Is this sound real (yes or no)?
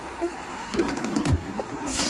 no